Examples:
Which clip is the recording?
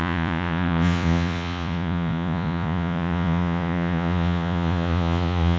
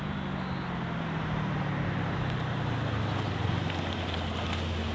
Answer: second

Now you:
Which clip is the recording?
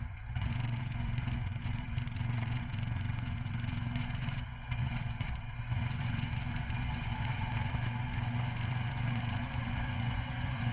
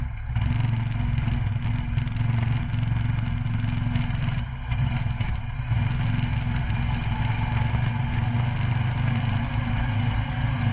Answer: second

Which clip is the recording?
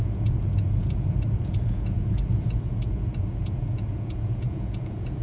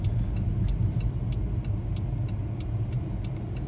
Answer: second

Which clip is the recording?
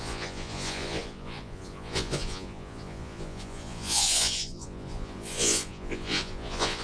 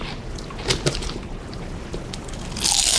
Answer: second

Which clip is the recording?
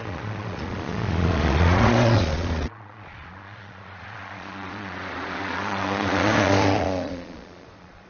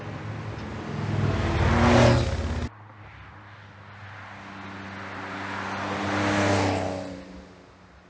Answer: second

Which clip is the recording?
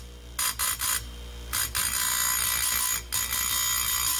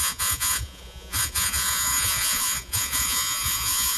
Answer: first